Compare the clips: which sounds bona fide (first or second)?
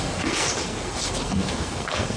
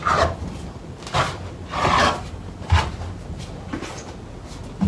second